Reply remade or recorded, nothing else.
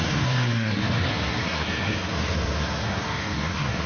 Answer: remade